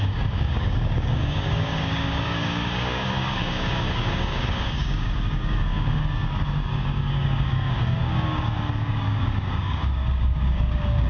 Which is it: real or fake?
fake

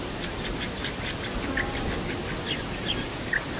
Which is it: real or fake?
real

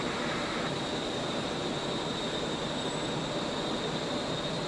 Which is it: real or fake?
real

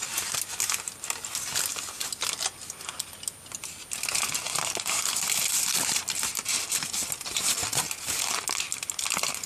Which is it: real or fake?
real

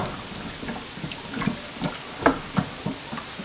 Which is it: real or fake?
real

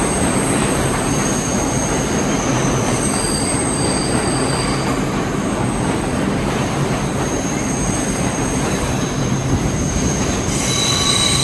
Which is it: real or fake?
fake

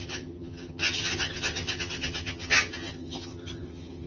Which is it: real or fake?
fake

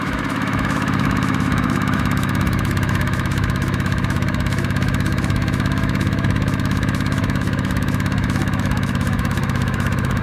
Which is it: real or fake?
fake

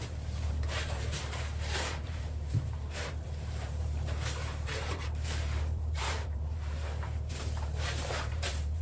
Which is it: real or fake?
fake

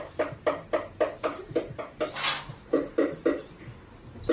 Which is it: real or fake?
real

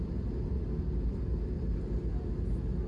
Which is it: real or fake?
real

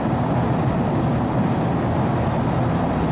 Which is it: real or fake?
real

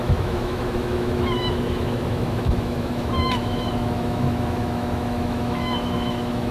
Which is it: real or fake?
fake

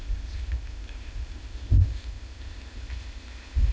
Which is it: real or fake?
fake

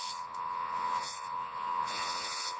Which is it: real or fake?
fake